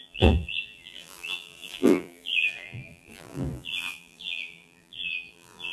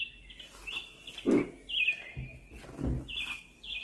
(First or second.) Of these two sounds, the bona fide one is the second